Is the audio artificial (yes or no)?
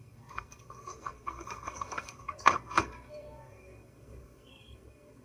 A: yes